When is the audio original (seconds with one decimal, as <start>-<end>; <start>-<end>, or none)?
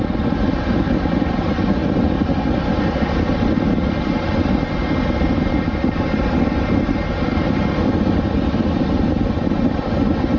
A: 0.0-10.4